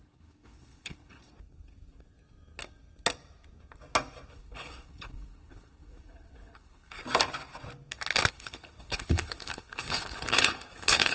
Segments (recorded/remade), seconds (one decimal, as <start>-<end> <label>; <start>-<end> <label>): 0.0-1.2 remade; 1.2-4.3 recorded; 4.3-7.0 remade; 7.0-8.3 recorded; 8.3-11.1 remade